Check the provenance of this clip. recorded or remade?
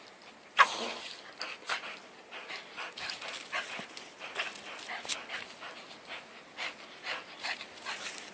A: recorded